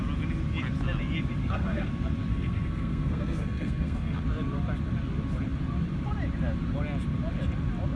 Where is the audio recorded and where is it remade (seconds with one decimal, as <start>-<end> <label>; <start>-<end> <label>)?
0.0-1.4 recorded; 1.4-1.9 remade; 1.9-2.3 recorded; 2.3-4.2 remade; 4.2-8.0 recorded